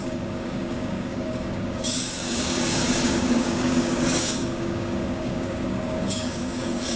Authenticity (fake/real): fake